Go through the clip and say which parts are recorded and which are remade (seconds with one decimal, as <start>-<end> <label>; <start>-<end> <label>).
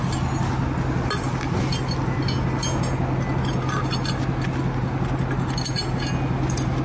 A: 0.0-6.8 recorded